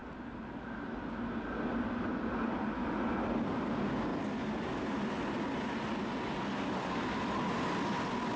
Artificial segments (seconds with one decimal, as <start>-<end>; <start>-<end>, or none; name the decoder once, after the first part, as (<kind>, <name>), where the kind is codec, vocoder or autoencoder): 0.0-0.6 (vocoder, BigVGAN v2)